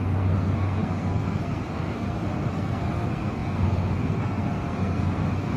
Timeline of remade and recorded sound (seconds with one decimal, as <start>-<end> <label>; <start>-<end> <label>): 0.0-5.6 remade